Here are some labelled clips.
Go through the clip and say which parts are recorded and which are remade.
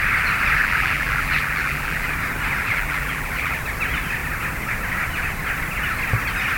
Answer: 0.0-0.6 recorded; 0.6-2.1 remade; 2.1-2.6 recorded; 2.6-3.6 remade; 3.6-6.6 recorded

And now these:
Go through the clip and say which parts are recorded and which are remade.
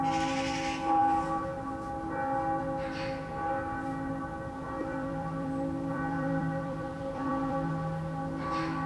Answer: 0.0-4.8 recorded; 4.8-7.7 remade; 7.7-8.9 recorded